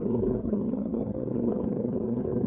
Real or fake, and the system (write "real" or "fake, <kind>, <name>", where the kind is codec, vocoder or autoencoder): fake, codec, SNAC